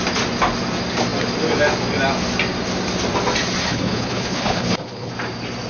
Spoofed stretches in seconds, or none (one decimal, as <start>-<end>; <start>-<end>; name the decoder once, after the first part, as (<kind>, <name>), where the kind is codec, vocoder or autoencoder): 3.6-5.1 (codec, HILCodec)